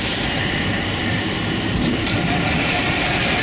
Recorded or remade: remade